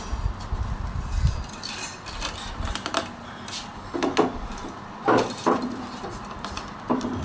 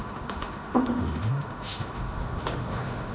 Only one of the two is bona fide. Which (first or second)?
first